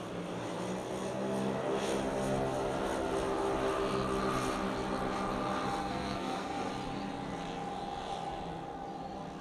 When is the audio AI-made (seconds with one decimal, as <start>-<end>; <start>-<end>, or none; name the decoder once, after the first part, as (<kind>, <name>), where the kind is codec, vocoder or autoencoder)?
5.8-6.7 (codec, SNAC)